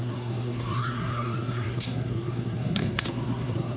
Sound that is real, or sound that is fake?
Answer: fake